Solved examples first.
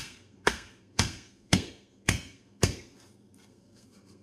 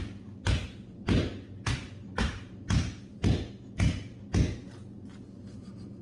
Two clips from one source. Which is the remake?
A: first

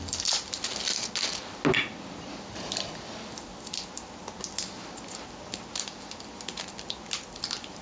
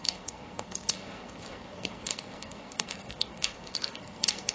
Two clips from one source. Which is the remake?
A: second